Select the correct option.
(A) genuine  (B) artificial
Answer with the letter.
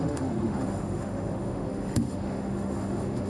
B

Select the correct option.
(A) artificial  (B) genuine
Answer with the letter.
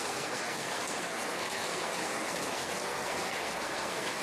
A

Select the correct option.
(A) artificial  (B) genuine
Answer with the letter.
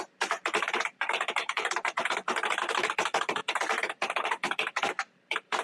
A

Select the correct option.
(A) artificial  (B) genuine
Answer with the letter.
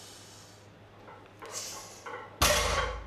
B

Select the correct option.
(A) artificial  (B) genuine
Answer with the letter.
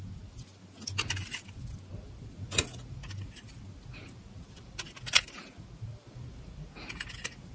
B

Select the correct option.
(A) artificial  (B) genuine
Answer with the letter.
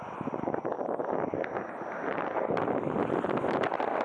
B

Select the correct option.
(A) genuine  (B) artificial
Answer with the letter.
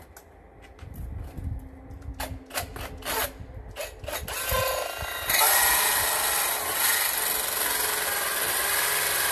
A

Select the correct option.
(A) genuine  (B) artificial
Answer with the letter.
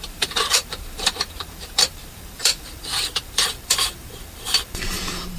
B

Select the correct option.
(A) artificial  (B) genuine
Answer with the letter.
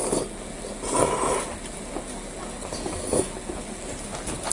B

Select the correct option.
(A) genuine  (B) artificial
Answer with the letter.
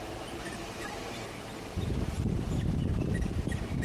B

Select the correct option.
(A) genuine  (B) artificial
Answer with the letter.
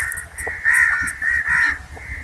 A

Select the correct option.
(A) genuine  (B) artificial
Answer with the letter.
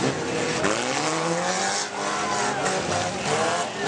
A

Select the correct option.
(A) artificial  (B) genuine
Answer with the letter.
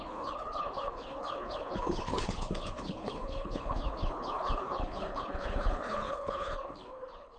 A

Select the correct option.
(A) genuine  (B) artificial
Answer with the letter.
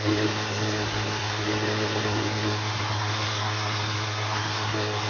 B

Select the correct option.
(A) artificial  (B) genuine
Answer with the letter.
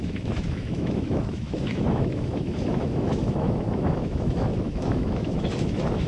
A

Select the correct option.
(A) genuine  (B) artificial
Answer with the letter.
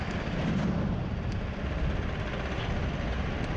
A